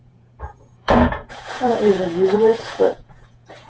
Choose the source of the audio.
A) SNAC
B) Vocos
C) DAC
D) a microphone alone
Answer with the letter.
B